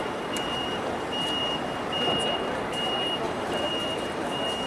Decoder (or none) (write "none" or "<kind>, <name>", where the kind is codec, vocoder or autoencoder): vocoder, BigVGAN v2